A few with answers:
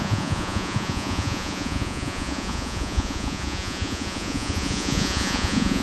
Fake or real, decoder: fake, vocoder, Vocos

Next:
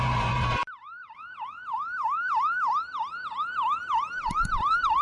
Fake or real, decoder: fake, vocoder, BigVGAN v2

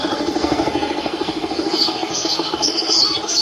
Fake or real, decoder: fake, codec, SNAC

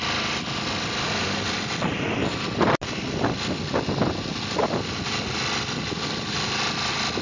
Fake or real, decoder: real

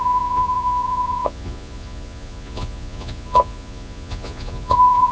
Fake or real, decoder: fake, vocoder, Vocos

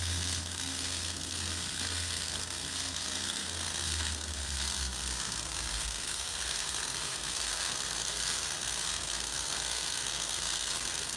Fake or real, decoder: fake, codec, SNAC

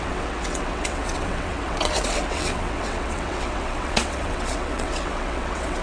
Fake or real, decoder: fake, vocoder, WaveNeXt